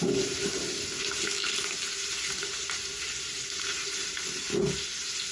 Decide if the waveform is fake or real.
real